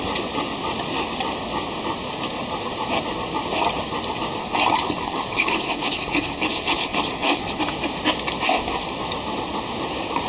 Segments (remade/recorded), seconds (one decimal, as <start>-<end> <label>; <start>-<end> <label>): 0.0-4.4 recorded; 4.4-7.6 remade; 7.6-10.3 recorded